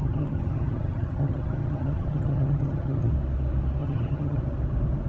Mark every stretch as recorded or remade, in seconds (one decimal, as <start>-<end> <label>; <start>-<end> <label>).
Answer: 0.0-3.1 remade; 3.1-3.8 recorded; 3.8-4.4 remade; 4.4-5.1 recorded